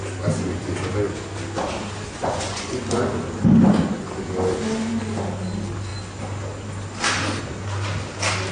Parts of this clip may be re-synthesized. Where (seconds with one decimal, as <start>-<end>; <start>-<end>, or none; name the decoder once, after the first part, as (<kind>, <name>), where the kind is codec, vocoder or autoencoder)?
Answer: 2.2-2.8 (vocoder, Vocos)